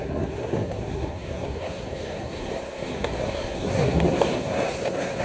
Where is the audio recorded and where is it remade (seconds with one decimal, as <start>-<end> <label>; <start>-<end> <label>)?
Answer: 0.0-5.2 remade